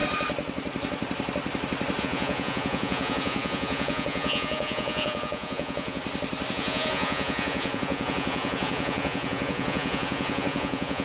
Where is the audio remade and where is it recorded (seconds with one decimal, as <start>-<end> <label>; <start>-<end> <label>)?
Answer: 0.0-2.0 recorded; 2.0-6.0 remade; 6.0-6.5 recorded; 6.5-11.0 remade